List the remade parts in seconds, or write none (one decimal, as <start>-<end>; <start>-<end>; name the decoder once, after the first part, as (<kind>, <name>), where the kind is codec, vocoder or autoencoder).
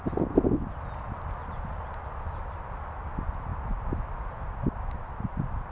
none